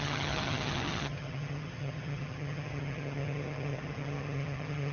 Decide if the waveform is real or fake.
fake